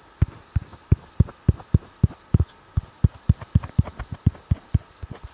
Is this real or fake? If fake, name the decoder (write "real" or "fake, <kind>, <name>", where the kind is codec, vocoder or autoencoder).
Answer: real